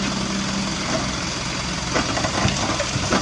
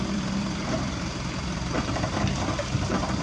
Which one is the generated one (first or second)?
second